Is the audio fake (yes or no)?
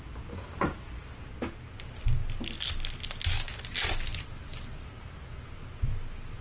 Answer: no